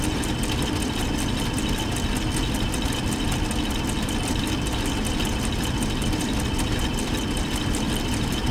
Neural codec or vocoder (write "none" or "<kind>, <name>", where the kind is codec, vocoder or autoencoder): none